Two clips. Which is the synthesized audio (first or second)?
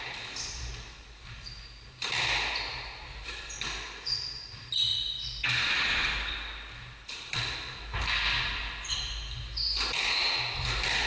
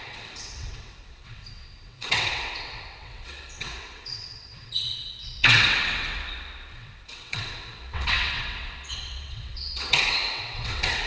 second